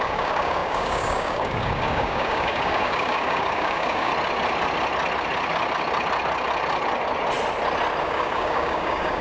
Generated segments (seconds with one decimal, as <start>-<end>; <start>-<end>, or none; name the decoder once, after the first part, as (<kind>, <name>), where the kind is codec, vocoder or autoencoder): 0.0-4.1 (codec, DAC); 8.0-9.2